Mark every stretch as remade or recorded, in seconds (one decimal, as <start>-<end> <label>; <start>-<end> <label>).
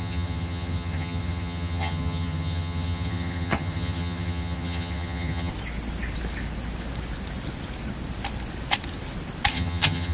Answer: 0.0-5.5 remade; 5.5-9.5 recorded; 9.5-10.1 remade